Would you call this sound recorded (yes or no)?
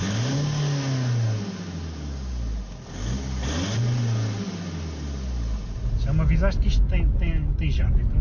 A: yes